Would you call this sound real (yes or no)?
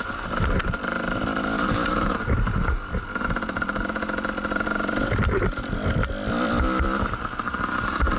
yes